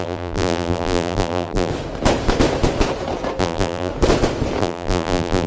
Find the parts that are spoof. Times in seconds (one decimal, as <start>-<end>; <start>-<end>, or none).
0.0-1.7; 3.4-3.9; 4.6-5.5